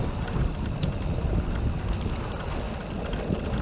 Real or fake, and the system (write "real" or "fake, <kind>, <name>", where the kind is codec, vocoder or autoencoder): real